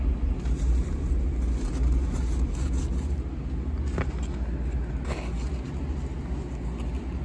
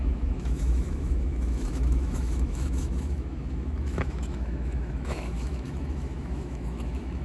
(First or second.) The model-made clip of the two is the second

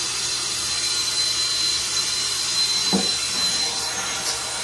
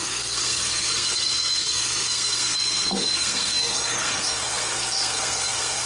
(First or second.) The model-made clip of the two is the second